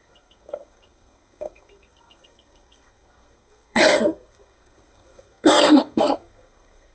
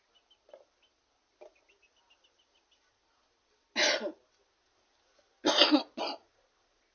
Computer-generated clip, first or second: first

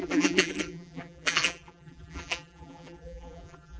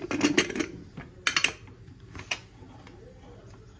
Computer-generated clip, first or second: first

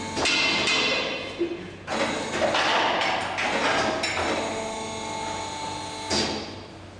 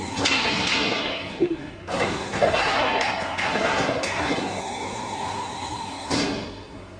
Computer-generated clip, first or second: second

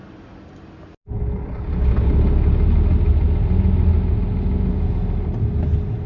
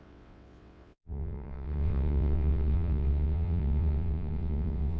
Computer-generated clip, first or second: second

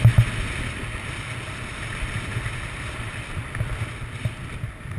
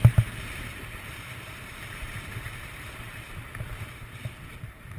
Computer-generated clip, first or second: second